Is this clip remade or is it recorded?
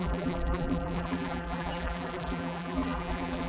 remade